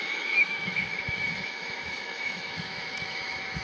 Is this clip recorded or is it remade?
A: remade